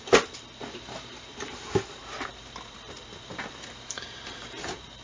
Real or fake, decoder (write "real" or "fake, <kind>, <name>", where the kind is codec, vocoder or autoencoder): fake, vocoder, BigVGAN v2